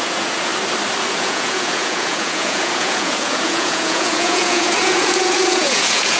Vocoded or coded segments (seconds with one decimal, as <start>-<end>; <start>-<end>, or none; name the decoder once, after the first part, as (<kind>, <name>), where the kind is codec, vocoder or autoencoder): 0.0-0.5 (vocoder, Vocos); 1.1-6.2